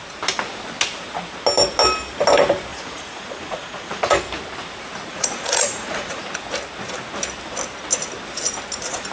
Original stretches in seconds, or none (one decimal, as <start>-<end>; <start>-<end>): 0.0-2.7; 4.2-5.1; 6.2-9.1